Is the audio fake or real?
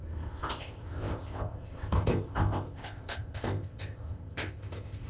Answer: fake